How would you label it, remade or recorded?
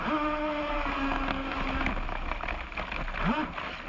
recorded